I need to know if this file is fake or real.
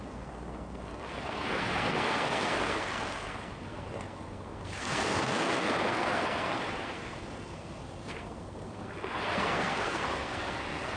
fake